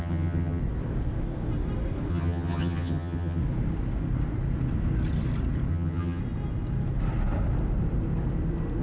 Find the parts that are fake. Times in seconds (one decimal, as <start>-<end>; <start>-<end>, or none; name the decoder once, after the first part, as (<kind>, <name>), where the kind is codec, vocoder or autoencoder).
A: 0.0-0.6 (vocoder, HiFi-GAN); 2.1-3.4; 5.7-6.2